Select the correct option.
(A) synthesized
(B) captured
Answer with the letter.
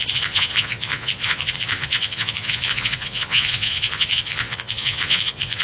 A